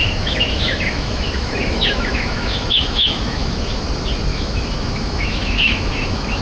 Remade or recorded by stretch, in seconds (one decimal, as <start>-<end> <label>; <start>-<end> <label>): 0.0-3.8 remade; 3.8-4.3 recorded; 4.3-6.4 remade